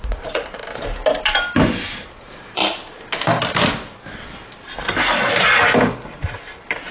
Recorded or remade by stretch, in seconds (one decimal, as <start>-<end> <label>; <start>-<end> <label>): 0.0-0.6 remade; 0.6-2.2 recorded; 2.2-2.6 remade; 2.6-6.9 recorded